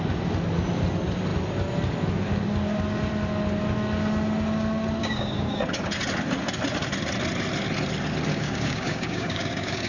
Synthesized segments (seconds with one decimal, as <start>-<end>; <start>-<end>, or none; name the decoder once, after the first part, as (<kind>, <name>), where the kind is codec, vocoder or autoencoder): 5.0-5.6 (codec, DAC); 8.3-9.9